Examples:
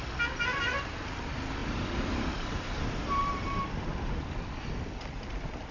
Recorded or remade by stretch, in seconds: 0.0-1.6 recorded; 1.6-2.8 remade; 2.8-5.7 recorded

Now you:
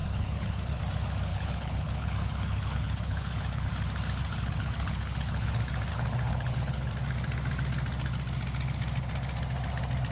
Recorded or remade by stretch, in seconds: 0.0-0.8 remade; 0.8-1.3 recorded; 1.3-3.7 remade; 3.7-4.2 recorded; 4.2-5.5 remade; 5.5-5.9 recorded; 5.9-6.9 remade; 6.9-10.1 recorded